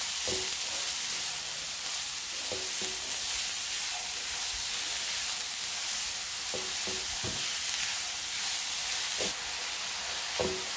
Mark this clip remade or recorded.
recorded